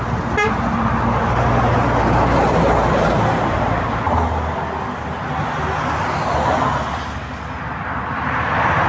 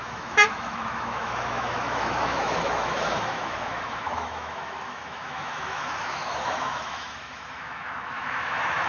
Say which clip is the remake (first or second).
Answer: second